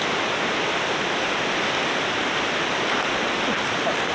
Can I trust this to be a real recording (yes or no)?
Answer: yes